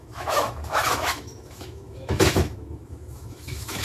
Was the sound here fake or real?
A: fake